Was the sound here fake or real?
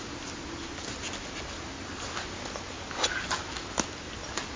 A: real